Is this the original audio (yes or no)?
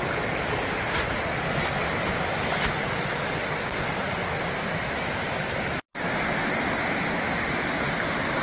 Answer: yes